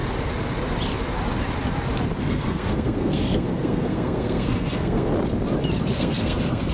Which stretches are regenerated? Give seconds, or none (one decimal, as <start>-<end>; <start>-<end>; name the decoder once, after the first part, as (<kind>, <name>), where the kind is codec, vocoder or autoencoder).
2.2-5.1 (codec, SNAC); 5.9-6.7